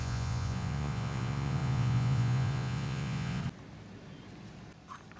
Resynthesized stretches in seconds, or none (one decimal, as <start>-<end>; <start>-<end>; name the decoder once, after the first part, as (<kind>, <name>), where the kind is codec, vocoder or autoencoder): 0.0-3.4 (vocoder, Vocos)